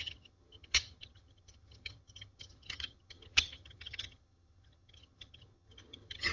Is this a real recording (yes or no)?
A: no